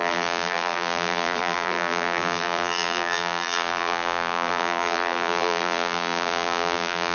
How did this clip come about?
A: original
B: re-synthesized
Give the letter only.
B